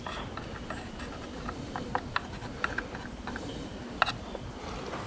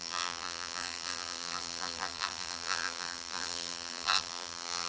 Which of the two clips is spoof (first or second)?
second